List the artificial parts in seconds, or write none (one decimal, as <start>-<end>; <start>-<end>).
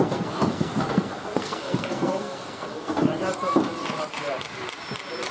0.0-3.1